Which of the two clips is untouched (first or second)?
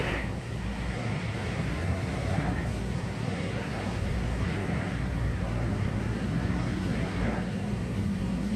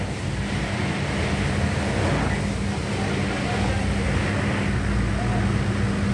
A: second